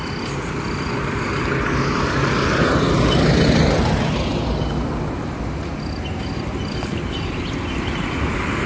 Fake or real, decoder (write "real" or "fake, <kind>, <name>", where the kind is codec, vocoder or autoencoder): real